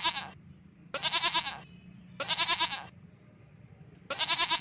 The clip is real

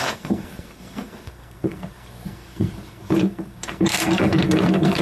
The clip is fake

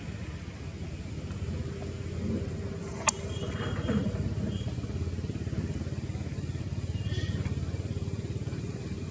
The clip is real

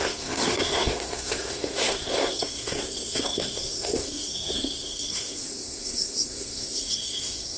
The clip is fake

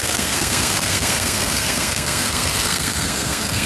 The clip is fake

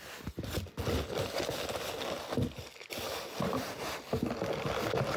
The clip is real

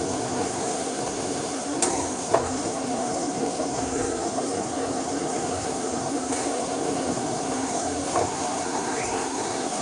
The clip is fake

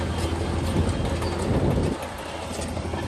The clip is real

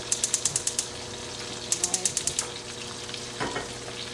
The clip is real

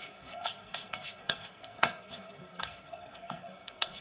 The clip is fake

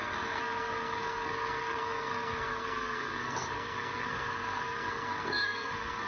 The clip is fake